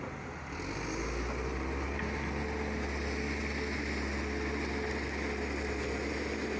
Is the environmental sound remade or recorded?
recorded